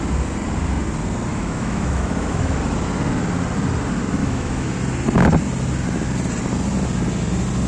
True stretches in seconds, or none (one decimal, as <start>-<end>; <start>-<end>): 0.0-1.3; 2.6-4.2; 4.7-7.7